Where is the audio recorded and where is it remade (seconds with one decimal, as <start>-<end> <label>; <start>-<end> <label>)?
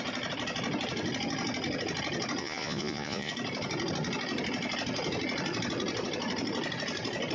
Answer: 0.0-2.4 recorded; 2.4-3.3 remade; 3.3-7.3 recorded